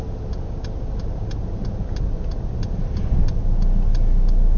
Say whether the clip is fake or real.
real